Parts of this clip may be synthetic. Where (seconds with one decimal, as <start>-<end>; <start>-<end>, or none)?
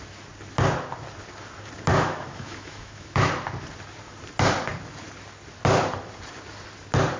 1.9-3.3